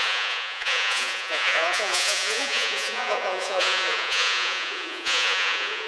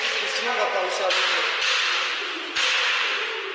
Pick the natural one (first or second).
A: second